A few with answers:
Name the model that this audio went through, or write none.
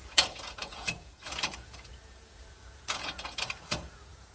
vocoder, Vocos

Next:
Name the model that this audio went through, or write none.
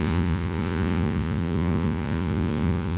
vocoder, Vocos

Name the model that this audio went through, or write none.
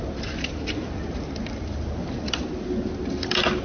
none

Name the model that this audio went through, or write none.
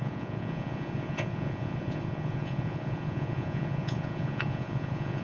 vocoder, Vocos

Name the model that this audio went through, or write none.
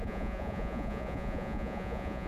vocoder, Vocos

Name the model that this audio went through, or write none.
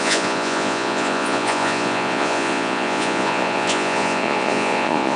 vocoder, Vocos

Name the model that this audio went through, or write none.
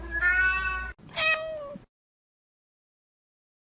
none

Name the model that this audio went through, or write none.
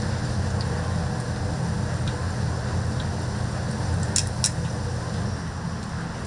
none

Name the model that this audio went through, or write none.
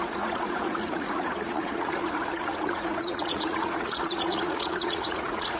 vocoder, Vocos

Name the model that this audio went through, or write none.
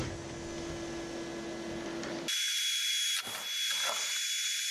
none